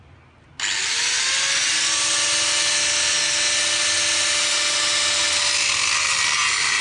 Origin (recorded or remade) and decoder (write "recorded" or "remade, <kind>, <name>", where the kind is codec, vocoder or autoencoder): recorded